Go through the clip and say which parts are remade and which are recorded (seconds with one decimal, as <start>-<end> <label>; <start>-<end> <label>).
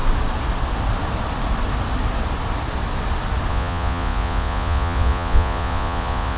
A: 0.0-3.5 recorded; 3.5-6.4 remade